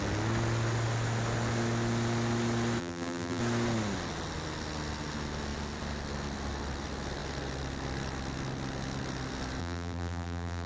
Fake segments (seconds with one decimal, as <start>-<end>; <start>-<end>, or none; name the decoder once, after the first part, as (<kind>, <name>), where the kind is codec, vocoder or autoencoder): 2.8-3.4 (vocoder, BigVGAN v2); 9.6-10.7